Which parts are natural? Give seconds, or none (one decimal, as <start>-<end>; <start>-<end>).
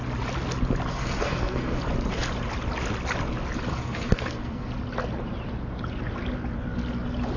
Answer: 0.0-0.9; 1.8-3.7; 4.7-7.4